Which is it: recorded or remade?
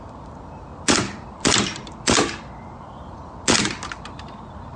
recorded